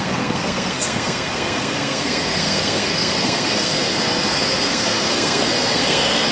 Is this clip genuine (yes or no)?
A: no